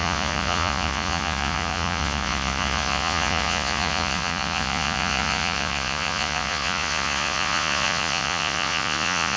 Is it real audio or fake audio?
fake